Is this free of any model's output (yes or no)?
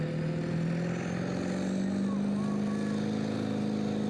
yes